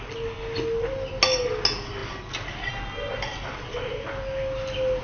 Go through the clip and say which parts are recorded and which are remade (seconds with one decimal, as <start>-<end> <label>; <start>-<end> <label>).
0.0-5.0 recorded